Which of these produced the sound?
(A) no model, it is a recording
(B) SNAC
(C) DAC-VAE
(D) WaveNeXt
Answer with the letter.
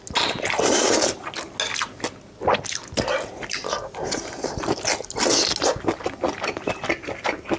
A